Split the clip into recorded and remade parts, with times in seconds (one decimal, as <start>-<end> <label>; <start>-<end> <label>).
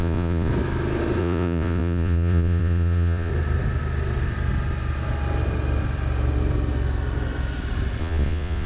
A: 0.0-0.5 remade; 0.5-1.2 recorded; 1.2-3.3 remade; 3.3-8.0 recorded; 8.0-8.7 remade